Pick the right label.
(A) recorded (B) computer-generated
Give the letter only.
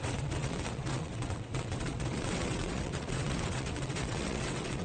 B